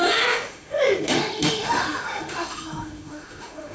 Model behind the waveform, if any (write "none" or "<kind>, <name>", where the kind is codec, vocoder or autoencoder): autoencoder, DAC-VAE